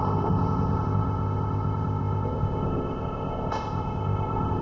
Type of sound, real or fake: fake